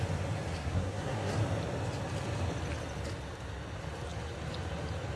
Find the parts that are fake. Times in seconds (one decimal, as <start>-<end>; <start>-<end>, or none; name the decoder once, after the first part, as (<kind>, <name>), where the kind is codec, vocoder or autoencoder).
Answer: 0.6-1.3 (codec, SNAC)